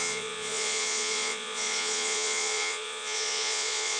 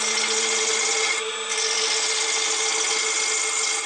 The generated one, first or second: first